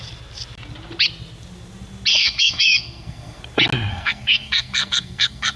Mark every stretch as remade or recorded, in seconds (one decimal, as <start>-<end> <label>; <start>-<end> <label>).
0.0-2.1 recorded; 2.1-3.4 remade; 3.4-3.9 recorded; 3.9-5.6 remade